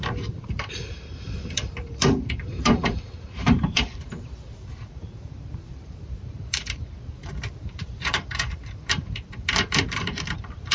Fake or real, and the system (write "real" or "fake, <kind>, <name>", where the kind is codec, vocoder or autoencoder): fake, vocoder, BigVGAN v2